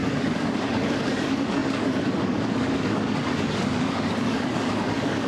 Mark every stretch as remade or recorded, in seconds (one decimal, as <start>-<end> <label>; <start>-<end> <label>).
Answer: 0.0-5.3 remade